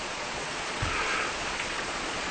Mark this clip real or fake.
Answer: fake